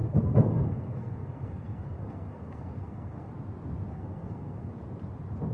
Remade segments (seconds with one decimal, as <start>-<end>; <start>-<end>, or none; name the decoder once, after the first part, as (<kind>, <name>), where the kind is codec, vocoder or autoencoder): 0.0-3.3 (codec, SNAC); 3.9-4.7